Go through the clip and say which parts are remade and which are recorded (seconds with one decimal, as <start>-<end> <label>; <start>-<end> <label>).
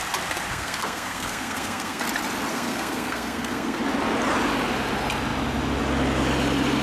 0.0-0.5 recorded; 0.5-2.0 remade; 2.0-2.5 recorded; 2.5-3.8 remade; 3.8-6.8 recorded